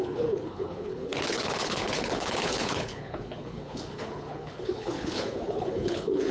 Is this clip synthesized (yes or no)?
yes